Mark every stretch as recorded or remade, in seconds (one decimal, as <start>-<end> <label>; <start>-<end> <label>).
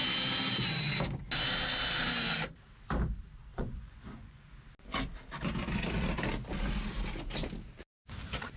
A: 0.0-3.5 recorded; 3.5-4.5 remade; 4.5-8.6 recorded